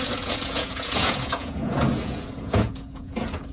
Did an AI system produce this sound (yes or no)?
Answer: yes